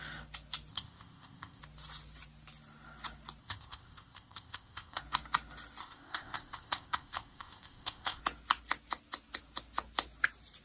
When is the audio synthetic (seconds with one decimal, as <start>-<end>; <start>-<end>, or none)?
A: 0.7-1.6; 3.4-5.0; 5.8-8.2